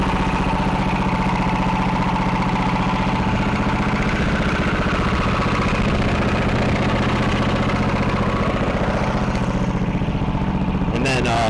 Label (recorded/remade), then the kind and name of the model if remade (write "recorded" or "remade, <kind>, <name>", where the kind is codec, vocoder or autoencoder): recorded